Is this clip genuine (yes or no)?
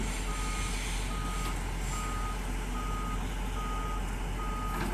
yes